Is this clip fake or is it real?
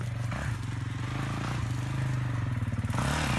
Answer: real